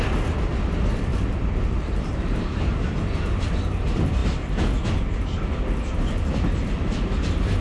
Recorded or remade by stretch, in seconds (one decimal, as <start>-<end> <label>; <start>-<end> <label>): 0.0-1.1 recorded; 1.1-2.9 remade; 2.9-7.6 recorded